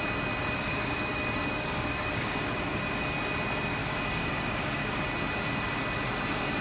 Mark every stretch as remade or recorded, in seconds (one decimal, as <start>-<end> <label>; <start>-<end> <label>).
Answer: 0.0-0.4 recorded; 0.4-2.8 remade; 2.8-3.8 recorded; 3.8-5.0 remade; 5.0-6.6 recorded